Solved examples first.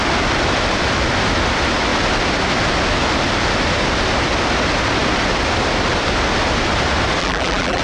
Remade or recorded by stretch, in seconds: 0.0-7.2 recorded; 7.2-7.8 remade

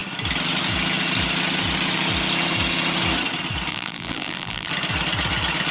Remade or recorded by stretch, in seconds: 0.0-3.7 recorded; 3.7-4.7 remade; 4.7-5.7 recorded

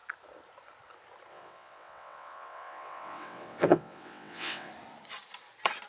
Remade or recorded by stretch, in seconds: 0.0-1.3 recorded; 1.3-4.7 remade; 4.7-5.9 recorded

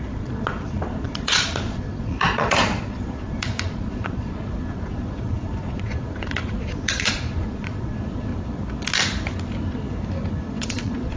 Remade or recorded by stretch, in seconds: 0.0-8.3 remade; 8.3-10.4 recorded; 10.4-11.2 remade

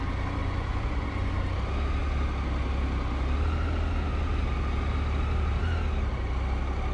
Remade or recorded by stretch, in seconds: 0.0-0.4 recorded; 0.4-1.3 remade; 1.3-6.9 recorded

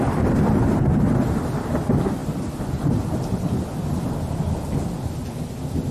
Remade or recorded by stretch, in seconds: 0.0-5.9 recorded

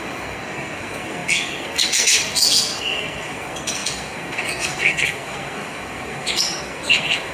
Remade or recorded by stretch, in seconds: 0.0-7.3 remade